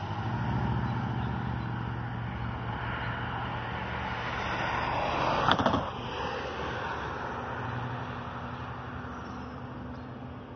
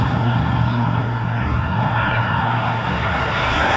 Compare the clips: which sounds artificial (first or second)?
second